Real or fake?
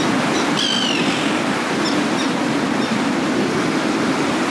real